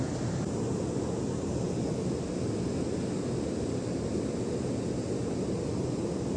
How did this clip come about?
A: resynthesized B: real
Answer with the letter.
B